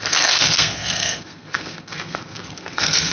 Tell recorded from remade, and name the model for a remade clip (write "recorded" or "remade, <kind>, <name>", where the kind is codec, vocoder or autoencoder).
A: remade, codec, SNAC